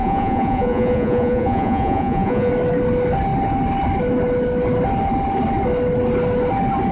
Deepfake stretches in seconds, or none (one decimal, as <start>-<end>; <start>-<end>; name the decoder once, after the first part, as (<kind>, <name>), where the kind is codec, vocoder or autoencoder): 0.0-2.5 (vocoder, Vocos)